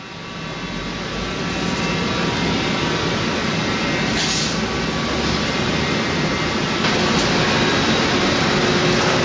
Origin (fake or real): real